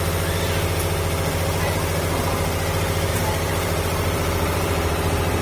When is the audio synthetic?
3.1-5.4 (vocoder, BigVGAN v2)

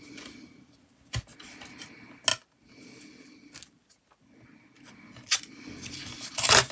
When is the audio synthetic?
2.3-4.9 (vocoder, BigVGAN v2)

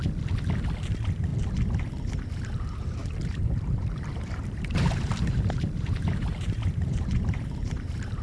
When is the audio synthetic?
3.0-8.2 (vocoder, BigVGAN v2)